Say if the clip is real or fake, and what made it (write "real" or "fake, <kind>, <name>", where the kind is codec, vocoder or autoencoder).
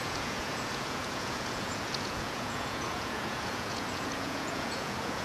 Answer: fake, vocoder, Vocos